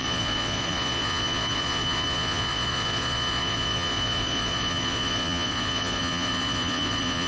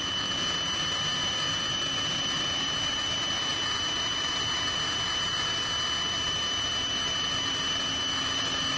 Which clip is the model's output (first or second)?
first